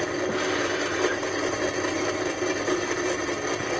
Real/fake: real